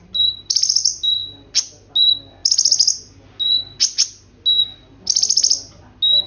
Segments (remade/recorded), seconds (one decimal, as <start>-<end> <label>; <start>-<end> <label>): 0.0-6.3 recorded